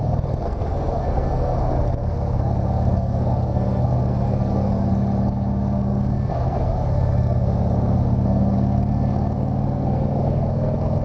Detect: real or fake fake